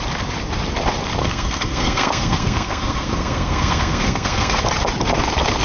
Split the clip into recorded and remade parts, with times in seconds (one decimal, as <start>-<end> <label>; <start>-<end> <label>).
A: 0.0-1.2 recorded; 1.2-4.6 remade; 4.6-5.6 recorded